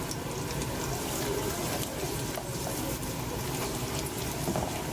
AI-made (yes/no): yes